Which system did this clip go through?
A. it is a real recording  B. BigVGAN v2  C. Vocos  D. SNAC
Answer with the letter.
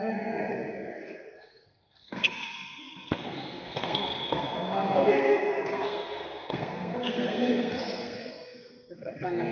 D